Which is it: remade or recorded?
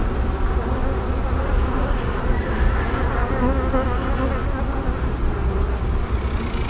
recorded